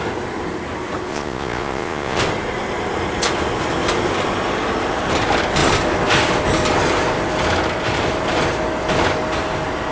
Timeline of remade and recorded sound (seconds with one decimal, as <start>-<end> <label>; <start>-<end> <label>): 0.0-1.1 recorded; 1.1-2.2 remade; 2.2-9.9 recorded